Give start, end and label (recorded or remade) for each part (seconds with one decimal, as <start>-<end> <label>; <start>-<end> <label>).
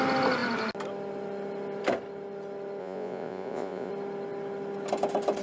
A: 0.0-2.8 recorded; 2.8-3.9 remade; 3.9-5.4 recorded